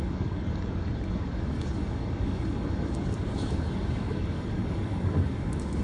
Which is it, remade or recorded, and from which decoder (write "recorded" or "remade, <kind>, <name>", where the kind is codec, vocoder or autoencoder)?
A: remade, codec, DAC